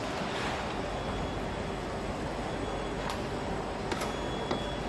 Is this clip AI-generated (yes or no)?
no